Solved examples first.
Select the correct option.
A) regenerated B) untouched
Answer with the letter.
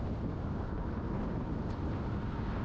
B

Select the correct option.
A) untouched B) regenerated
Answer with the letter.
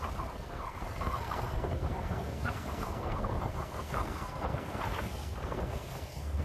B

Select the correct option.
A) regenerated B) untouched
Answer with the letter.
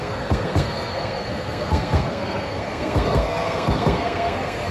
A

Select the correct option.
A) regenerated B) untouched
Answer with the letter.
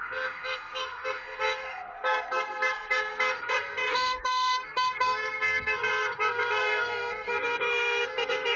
A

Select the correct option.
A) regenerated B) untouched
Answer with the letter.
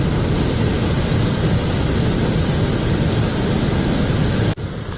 B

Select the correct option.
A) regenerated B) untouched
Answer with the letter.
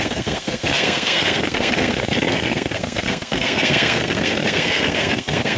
A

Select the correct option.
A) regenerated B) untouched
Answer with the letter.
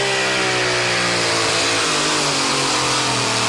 B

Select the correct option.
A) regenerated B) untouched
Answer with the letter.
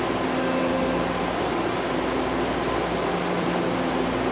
B